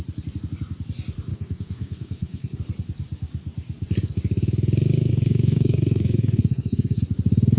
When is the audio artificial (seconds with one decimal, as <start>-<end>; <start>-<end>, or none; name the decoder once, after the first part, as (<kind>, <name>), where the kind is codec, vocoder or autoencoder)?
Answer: 1.3-2.6 (codec, SNAC); 5.1-7.0